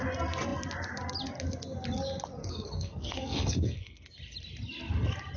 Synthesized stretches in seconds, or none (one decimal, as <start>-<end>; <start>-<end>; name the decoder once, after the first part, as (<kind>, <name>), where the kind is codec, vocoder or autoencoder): 2.4-4.1 (codec, SNAC)